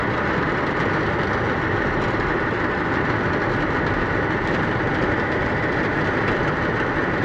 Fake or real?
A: real